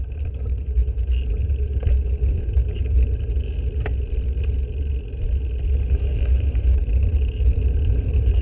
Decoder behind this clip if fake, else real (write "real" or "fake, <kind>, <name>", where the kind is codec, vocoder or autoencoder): real